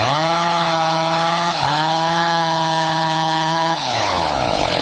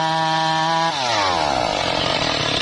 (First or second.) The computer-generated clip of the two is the first